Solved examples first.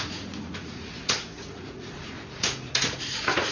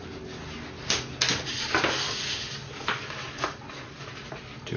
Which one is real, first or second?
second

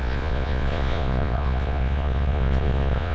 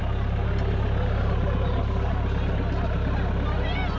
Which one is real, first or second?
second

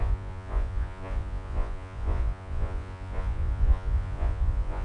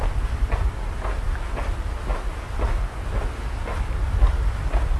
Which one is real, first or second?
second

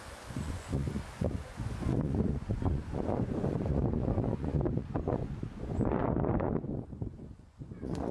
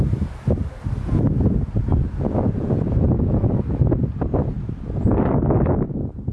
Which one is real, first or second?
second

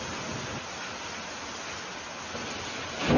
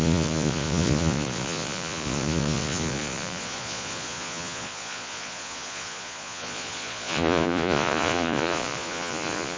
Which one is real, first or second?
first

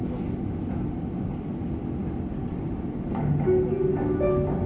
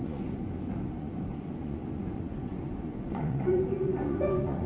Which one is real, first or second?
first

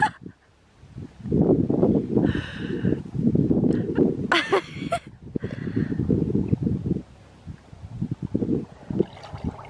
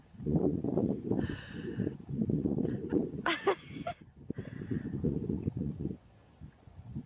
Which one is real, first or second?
first